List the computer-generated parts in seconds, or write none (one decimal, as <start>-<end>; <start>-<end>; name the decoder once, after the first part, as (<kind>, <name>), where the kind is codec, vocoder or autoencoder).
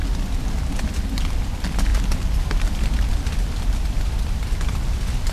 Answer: none